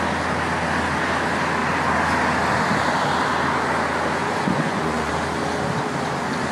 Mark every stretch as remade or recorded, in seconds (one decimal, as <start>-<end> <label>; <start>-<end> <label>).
0.0-4.2 recorded; 4.2-5.1 remade; 5.1-6.5 recorded